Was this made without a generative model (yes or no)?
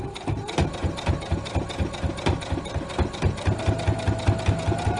yes